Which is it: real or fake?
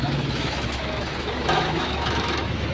fake